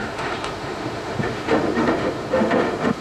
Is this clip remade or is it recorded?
remade